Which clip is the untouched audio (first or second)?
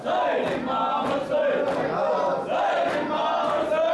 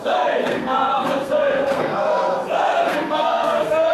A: first